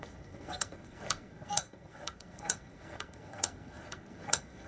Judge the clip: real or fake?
fake